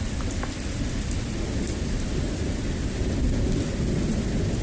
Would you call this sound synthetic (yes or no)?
no